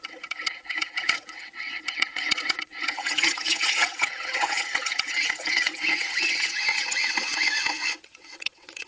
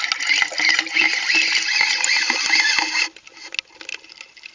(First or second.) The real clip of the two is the second